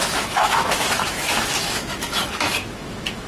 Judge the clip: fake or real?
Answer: fake